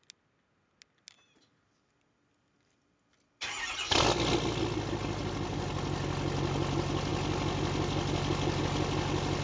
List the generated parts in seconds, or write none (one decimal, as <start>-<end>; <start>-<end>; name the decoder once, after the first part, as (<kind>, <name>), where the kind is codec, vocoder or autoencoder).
none